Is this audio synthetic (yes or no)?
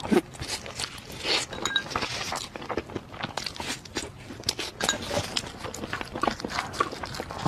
no